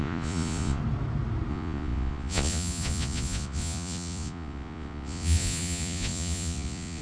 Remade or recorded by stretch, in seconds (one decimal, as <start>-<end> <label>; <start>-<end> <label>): 0.0-0.8 remade; 0.8-1.5 recorded; 1.5-7.0 remade